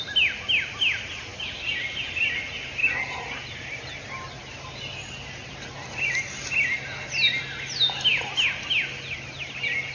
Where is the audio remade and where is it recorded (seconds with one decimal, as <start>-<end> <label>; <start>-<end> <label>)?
0.0-9.9 recorded